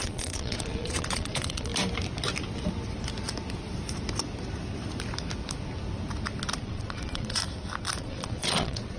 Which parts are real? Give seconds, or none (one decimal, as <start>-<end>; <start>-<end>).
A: 1.7-6.6; 7.4-8.0